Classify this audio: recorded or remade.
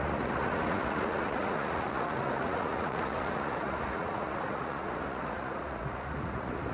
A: remade